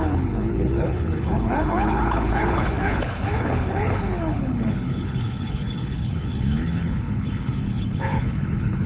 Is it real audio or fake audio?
fake